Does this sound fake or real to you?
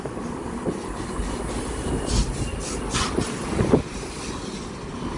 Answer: real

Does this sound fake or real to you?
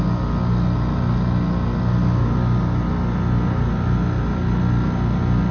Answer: real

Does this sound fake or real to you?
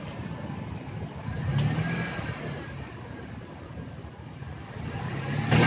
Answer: real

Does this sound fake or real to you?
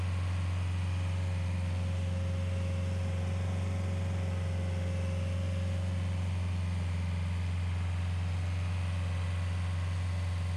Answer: real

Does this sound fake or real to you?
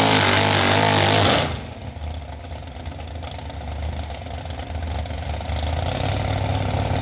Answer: real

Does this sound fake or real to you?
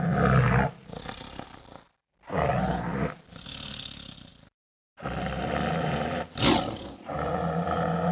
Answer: real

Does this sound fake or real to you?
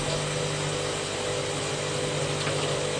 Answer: real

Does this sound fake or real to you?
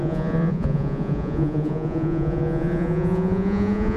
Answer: fake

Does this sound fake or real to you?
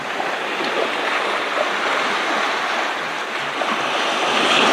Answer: real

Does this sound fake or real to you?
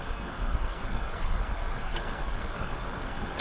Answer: fake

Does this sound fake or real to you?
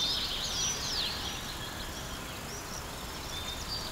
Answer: real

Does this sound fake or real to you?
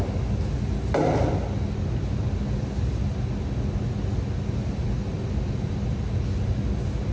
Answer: real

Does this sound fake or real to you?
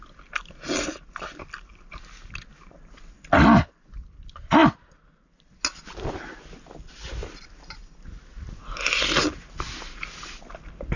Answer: real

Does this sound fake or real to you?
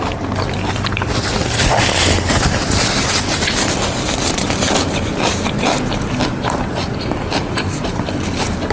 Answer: fake